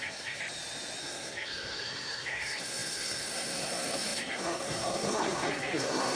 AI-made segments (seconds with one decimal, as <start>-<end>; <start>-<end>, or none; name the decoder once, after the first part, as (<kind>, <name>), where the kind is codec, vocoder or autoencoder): 0.0-0.4 (codec, SNAC); 1.0-6.2

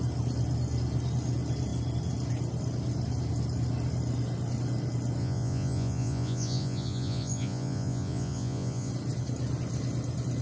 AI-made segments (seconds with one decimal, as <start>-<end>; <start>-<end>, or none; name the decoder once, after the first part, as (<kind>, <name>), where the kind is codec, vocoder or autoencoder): 5.2-8.9 (vocoder, Vocos)

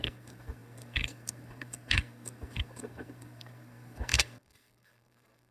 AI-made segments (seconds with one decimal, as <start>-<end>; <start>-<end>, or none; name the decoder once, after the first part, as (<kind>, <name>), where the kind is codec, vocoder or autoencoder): 0.0-5.5 (codec, SNAC)

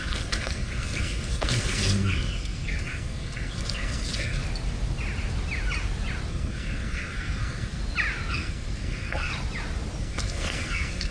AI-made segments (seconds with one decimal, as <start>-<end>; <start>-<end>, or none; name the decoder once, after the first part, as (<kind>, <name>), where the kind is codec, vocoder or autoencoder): 0.0-4.4 (codec, SNAC); 6.3-7.8; 8.3-9.3; 10.0-11.1